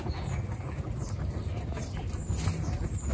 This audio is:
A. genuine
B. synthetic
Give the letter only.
A